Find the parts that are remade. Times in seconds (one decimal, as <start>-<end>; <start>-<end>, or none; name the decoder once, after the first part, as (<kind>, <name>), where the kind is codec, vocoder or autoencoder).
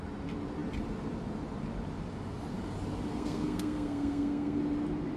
3.1-4.6 (codec, SNAC)